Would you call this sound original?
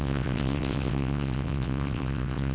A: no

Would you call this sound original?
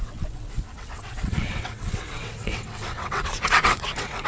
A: no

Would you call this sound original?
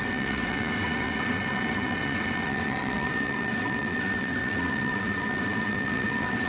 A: no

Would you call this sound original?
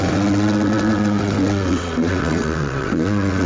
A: no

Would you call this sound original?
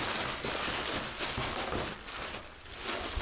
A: yes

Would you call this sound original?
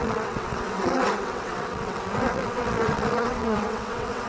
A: no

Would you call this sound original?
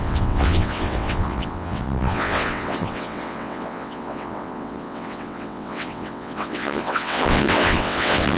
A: no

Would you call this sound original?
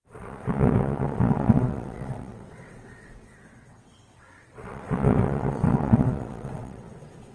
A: no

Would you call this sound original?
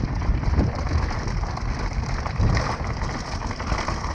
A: yes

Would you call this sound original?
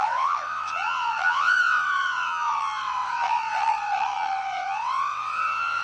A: no